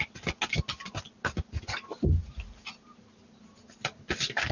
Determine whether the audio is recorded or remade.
recorded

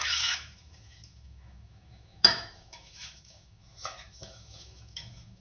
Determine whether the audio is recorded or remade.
remade